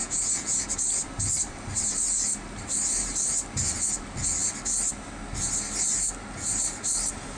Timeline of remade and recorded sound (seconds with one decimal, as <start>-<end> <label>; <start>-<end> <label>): 0.0-0.6 remade; 0.6-7.4 recorded